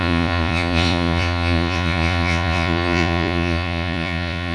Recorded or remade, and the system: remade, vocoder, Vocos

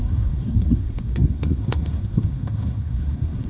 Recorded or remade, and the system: remade, codec, SNAC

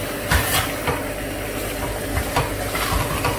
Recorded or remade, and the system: recorded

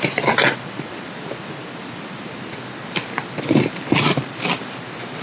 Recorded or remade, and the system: recorded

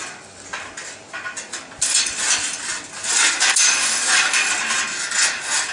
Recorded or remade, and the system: recorded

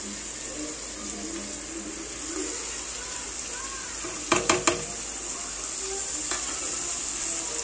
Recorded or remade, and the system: recorded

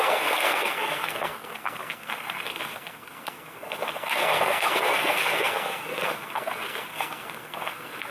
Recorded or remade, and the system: remade, codec, SNAC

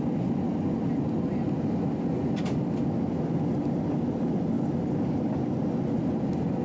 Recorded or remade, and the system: recorded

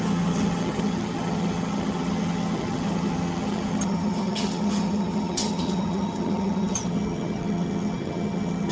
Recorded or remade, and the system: remade, vocoder, HiFi-GAN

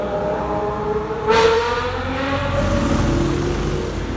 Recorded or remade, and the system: recorded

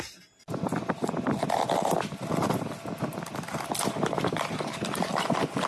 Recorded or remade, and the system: recorded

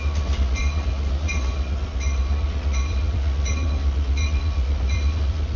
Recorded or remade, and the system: remade, vocoder, Vocos